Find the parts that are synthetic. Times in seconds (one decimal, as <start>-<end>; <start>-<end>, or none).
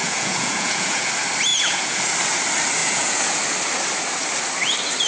0.0-1.1; 1.5-2.0; 2.8-3.4